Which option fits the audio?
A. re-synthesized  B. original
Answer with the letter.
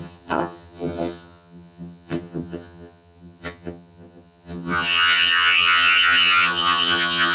A